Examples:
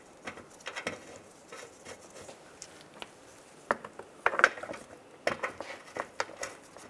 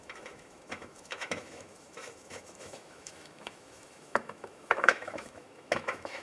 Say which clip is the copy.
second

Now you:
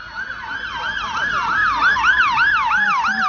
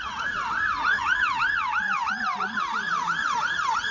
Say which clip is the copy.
second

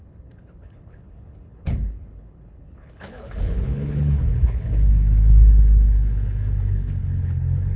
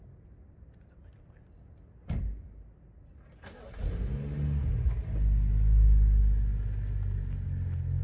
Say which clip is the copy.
first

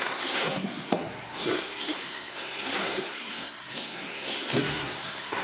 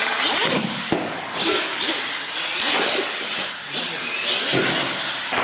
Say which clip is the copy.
first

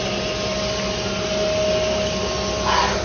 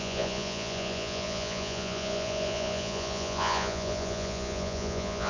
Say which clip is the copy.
second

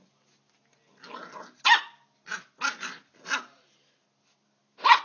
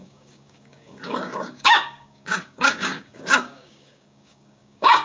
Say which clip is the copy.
second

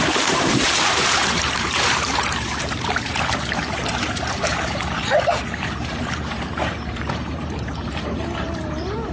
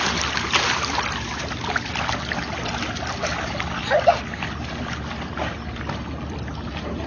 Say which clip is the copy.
first